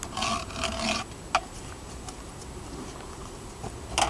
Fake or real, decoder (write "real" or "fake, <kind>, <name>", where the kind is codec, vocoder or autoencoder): real